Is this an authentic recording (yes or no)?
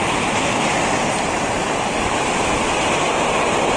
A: yes